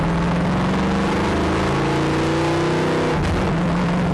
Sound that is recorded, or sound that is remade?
recorded